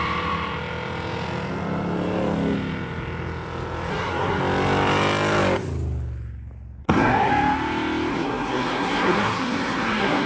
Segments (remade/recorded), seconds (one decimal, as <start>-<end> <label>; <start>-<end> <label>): 0.0-3.9 recorded; 3.9-4.4 remade; 4.4-6.8 recorded; 6.8-7.3 remade; 7.3-8.1 recorded; 8.1-10.3 remade